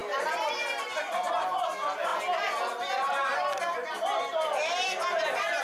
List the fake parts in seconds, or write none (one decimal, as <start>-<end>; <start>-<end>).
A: none